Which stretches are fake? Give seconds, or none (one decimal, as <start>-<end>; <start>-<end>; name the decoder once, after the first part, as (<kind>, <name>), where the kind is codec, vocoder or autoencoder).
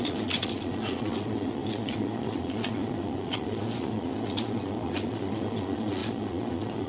0.0-6.9 (vocoder, Vocos)